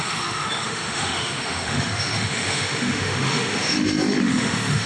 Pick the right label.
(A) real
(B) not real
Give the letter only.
B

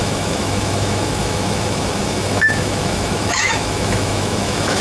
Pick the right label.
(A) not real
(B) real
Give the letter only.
A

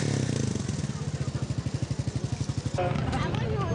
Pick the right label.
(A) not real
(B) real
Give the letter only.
B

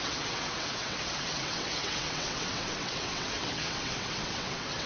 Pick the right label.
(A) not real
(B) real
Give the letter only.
A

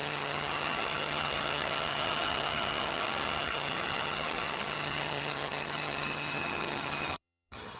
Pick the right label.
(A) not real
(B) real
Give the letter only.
A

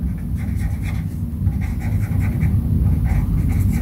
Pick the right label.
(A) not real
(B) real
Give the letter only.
B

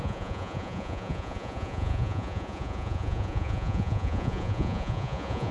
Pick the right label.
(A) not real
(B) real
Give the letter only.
A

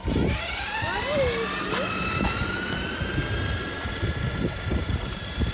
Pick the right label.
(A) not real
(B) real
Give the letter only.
B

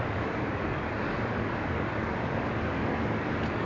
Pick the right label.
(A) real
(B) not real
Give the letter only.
B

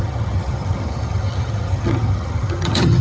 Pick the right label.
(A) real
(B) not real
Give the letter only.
B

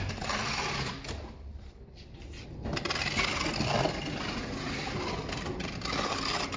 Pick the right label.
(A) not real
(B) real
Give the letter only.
B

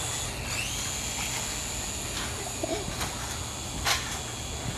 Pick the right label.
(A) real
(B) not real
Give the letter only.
A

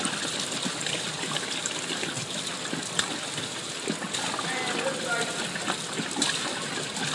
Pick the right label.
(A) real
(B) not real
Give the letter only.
A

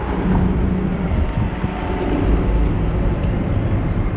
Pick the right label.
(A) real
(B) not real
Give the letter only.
A